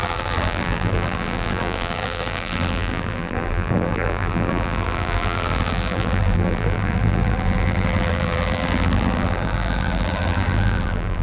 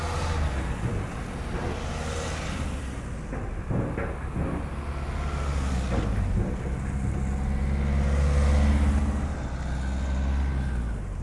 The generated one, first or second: first